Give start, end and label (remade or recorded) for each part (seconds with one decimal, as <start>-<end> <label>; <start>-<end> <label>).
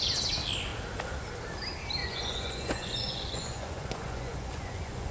0.0-2.0 recorded; 2.0-5.1 remade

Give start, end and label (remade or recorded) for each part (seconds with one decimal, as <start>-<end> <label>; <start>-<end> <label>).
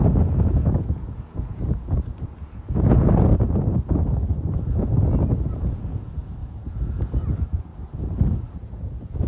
0.0-3.3 remade; 3.3-4.7 recorded; 4.7-7.7 remade; 7.7-8.4 recorded; 8.4-9.3 remade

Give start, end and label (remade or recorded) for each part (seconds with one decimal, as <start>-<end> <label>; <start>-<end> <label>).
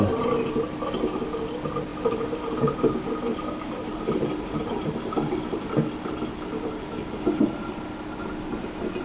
0.0-1.9 recorded; 1.9-5.7 remade; 5.7-9.0 recorded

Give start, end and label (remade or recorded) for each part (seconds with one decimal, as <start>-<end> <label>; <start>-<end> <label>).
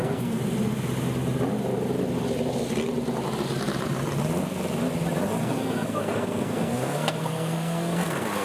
0.0-0.4 remade; 0.4-5.4 recorded; 5.4-8.4 remade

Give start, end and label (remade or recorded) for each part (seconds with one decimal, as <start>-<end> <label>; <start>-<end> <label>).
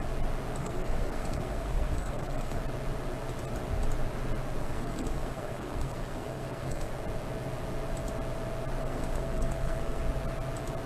0.0-0.6 recorded; 0.6-2.6 remade; 2.6-4.6 recorded; 4.6-6.9 remade; 6.9-8.8 recorded; 8.8-10.0 remade; 10.0-10.9 recorded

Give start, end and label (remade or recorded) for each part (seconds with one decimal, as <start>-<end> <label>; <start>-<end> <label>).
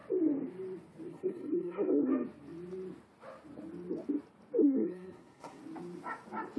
0.0-1.1 recorded; 1.1-2.1 remade; 2.1-4.6 recorded; 4.6-5.6 remade; 5.6-6.6 recorded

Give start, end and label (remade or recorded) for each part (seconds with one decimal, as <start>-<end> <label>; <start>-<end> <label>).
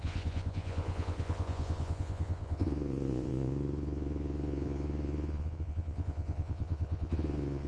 0.0-7.7 remade